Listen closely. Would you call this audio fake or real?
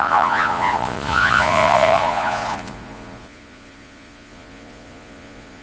fake